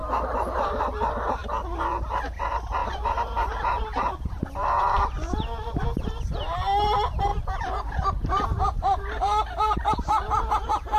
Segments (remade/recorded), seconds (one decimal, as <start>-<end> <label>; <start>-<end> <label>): 0.0-0.8 remade; 0.8-2.8 recorded; 2.8-4.8 remade; 4.8-7.3 recorded; 7.3-11.0 remade